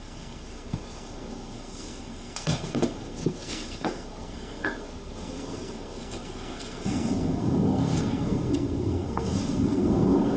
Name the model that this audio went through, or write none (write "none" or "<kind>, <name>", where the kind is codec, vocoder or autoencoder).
codec, SNAC